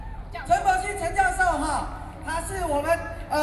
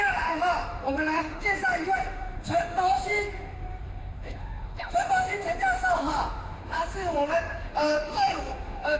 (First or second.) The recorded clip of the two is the first